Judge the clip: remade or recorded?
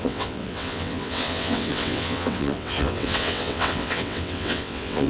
remade